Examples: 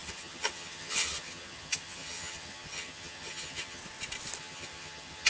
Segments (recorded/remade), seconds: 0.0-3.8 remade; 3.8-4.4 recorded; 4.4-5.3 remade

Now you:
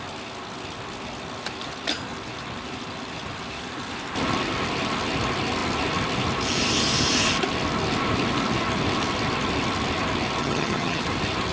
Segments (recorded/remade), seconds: 0.0-10.4 recorded; 10.4-11.0 remade; 11.0-11.5 recorded

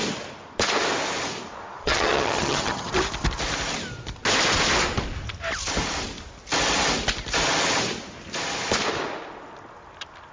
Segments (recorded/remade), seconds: 0.0-1.8 recorded; 1.8-2.9 remade; 2.9-10.3 recorded

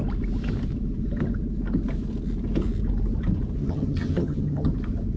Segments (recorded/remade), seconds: 0.0-3.6 recorded; 3.6-4.7 remade; 4.7-5.2 recorded

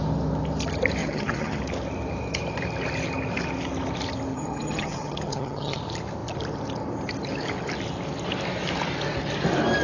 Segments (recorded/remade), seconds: 0.0-1.0 recorded; 1.0-1.6 remade; 1.6-4.3 recorded; 4.3-5.8 remade; 5.8-9.8 recorded

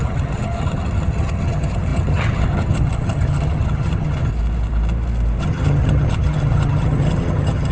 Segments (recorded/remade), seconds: 0.0-4.3 remade; 4.3-5.4 recorded; 5.4-7.7 remade

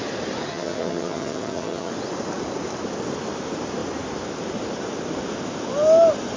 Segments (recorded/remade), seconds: 0.0-0.5 recorded; 0.5-1.9 remade; 1.9-6.4 recorded

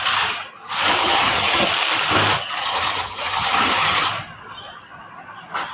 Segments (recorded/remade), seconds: 0.0-1.0 recorded; 1.0-1.7 remade; 1.7-2.6 recorded; 2.6-4.1 remade; 4.1-5.7 recorded